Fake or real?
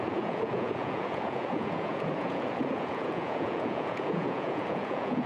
fake